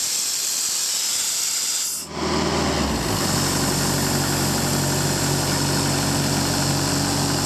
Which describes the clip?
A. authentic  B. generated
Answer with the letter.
A